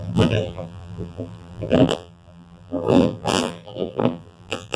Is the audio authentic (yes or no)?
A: no